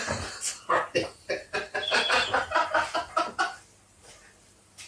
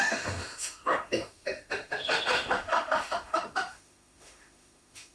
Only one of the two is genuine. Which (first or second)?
first